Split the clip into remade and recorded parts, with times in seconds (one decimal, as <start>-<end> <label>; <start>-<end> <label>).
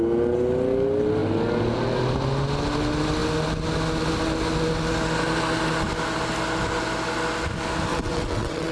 0.0-7.9 recorded; 7.9-8.7 remade